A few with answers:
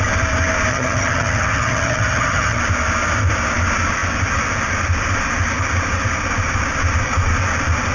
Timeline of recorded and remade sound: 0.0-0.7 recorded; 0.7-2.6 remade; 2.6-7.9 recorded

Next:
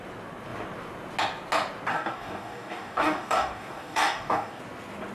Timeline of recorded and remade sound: 0.0-1.9 recorded; 1.9-4.6 remade; 4.6-5.1 recorded

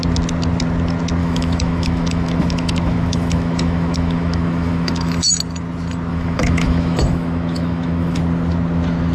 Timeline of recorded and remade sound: 0.0-1.2 recorded; 1.2-5.4 remade; 5.4-6.1 recorded; 6.1-8.2 remade; 8.2-9.1 recorded

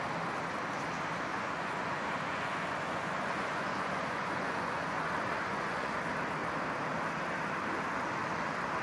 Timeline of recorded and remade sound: 0.0-1.3 recorded; 1.3-6.0 remade; 6.0-8.8 recorded

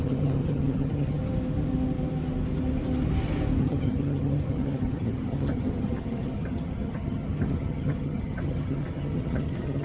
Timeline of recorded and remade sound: 0.0-1.2 remade; 1.2-3.6 recorded; 3.6-9.8 remade

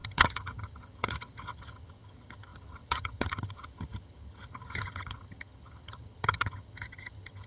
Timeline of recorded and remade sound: 0.0-7.5 remade